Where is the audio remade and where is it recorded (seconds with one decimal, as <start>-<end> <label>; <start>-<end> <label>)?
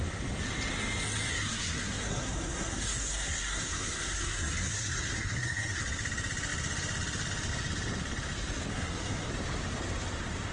0.0-1.3 recorded; 1.3-5.8 remade; 5.8-8.7 recorded; 8.7-9.3 remade; 9.3-10.5 recorded